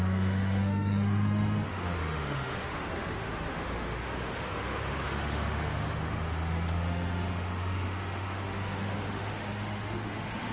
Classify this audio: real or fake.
fake